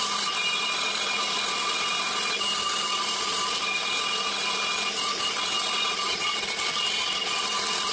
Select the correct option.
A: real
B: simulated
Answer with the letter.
A